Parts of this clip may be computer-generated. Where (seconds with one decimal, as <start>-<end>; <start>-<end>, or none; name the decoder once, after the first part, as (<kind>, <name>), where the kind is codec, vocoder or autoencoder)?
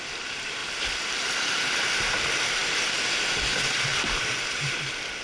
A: 0.6-1.6 (vocoder, BigVGAN v2)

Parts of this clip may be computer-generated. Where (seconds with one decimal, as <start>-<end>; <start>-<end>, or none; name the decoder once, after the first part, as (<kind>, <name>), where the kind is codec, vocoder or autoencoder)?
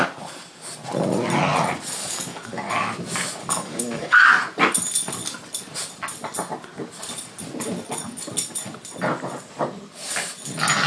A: 2.0-2.7 (codec, DAC); 3.4-4.3